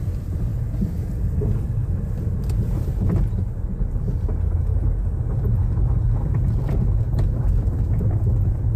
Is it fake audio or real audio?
real